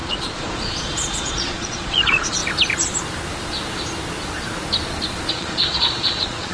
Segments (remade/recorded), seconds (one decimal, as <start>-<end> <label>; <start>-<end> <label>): 0.0-2.4 remade; 2.4-5.3 recorded; 5.3-6.5 remade